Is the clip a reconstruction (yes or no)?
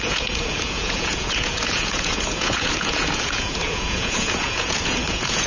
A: yes